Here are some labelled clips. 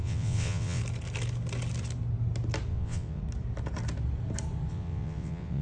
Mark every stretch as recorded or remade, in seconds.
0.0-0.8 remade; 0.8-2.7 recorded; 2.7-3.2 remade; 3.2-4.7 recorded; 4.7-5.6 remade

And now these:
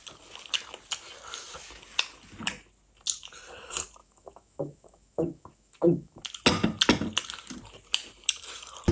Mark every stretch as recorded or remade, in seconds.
0.0-4.0 recorded; 4.0-6.2 remade; 6.2-8.9 recorded

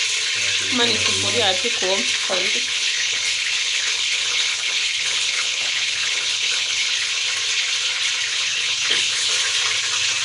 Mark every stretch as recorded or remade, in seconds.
0.0-2.2 recorded; 2.2-7.1 remade; 7.1-8.3 recorded; 8.3-9.3 remade; 9.3-10.2 recorded